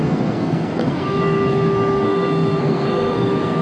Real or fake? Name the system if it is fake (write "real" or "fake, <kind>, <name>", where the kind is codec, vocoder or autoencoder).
fake, codec, SNAC